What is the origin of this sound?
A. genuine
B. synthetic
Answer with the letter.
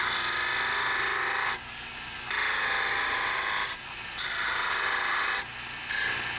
A